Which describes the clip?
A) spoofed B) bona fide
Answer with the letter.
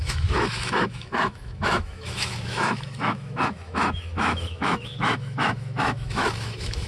A